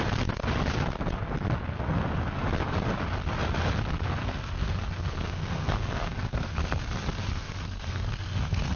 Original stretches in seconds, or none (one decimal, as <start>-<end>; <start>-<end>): 0.0-4.2; 6.8-7.3